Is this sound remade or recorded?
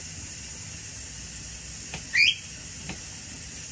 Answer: recorded